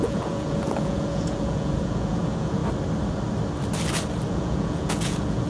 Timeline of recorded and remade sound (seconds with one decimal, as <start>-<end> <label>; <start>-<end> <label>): 0.0-2.6 remade; 2.6-4.3 recorded; 4.3-5.5 remade